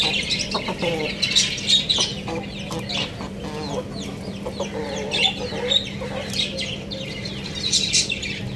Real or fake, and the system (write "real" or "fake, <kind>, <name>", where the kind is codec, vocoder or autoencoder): real